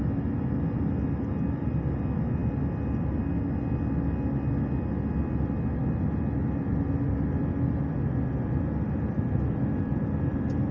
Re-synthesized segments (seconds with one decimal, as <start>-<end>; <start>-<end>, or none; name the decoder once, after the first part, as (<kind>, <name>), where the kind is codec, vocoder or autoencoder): none